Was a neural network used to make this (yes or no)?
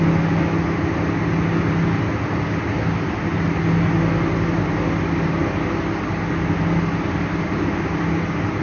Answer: no